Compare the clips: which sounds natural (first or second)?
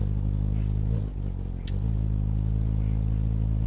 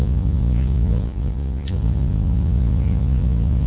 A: first